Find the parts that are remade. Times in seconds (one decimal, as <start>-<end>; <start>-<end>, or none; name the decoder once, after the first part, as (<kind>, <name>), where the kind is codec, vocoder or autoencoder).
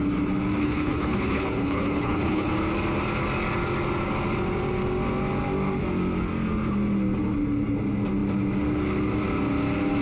0.6-2.5 (codec, HILCodec)